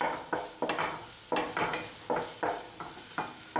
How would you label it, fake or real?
real